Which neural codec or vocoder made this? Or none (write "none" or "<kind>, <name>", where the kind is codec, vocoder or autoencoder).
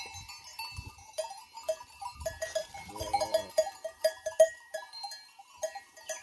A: vocoder, BigVGAN v2